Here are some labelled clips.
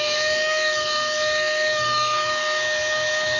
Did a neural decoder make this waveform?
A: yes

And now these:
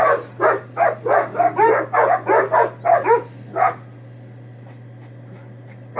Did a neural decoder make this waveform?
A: no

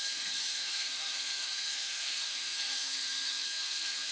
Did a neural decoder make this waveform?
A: yes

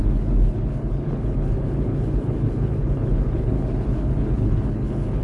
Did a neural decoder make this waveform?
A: yes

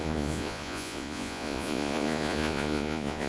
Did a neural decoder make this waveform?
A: yes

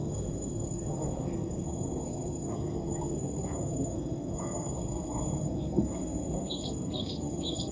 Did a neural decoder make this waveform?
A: yes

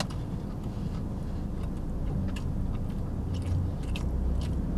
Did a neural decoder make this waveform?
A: no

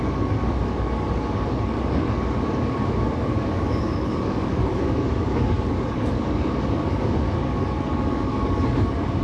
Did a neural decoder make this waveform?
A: yes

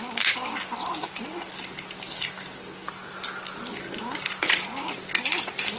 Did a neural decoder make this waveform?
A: no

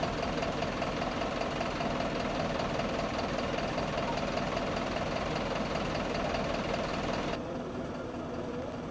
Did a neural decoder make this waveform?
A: no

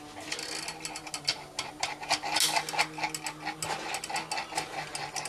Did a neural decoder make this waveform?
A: no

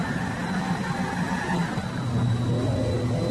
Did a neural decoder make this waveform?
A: no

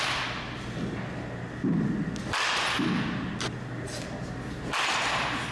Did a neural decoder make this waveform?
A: no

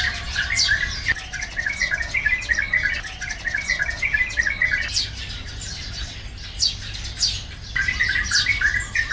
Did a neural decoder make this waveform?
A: no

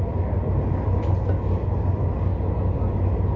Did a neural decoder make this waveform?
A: no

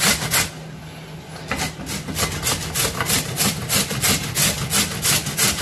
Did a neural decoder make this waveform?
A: no